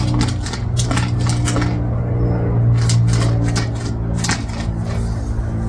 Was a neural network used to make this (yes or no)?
no